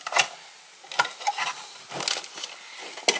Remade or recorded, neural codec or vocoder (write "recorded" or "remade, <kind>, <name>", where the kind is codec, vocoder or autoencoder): recorded